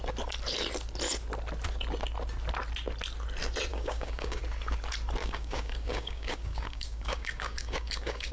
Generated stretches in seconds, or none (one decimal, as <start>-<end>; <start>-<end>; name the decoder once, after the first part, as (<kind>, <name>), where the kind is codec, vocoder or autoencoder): 3.7-4.4 (codec, DAC); 5.2-8.3